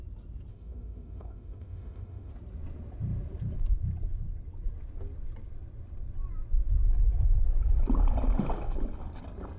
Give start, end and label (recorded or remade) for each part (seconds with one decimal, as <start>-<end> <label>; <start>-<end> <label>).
0.0-0.5 recorded; 0.5-2.3 remade; 2.3-9.6 recorded